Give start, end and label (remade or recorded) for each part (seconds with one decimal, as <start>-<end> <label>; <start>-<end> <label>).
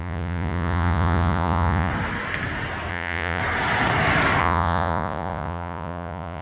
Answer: 0.0-1.9 remade; 1.9-2.9 recorded; 2.9-3.4 remade; 3.4-4.4 recorded; 4.4-6.4 remade